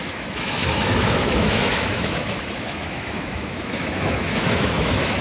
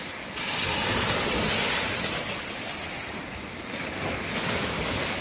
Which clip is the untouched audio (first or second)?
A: second